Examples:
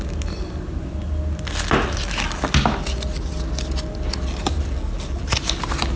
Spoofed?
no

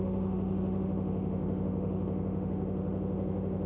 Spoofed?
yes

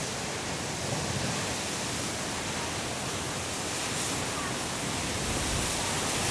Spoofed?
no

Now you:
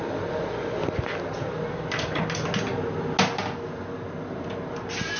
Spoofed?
no